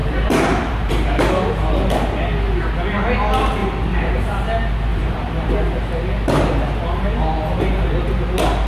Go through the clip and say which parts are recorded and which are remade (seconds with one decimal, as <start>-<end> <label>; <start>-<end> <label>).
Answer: 0.0-0.9 remade; 0.9-3.6 recorded; 3.6-4.2 remade; 4.2-4.9 recorded; 4.9-5.5 remade; 5.5-8.7 recorded